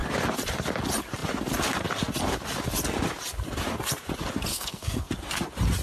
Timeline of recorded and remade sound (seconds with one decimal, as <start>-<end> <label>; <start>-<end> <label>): 0.0-4.5 recorded; 4.5-5.1 remade; 5.1-5.8 recorded